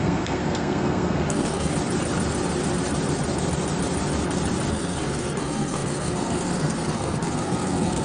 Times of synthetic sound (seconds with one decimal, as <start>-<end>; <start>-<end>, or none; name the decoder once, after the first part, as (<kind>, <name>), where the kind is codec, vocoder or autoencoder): 0.0-1.7 (codec, SNAC); 4.7-8.0